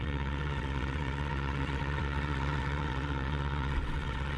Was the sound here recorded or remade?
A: remade